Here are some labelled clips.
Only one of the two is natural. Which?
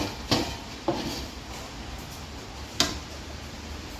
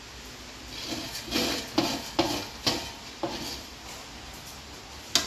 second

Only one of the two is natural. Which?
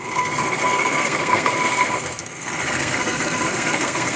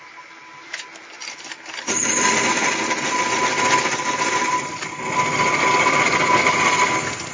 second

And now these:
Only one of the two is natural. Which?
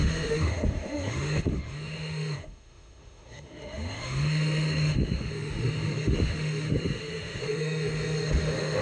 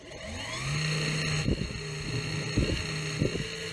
second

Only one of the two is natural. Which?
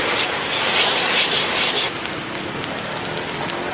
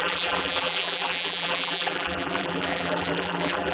first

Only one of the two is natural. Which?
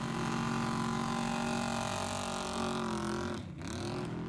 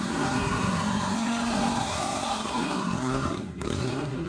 first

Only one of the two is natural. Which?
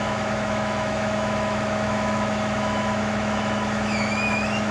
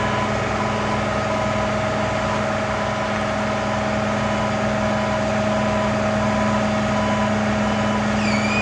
second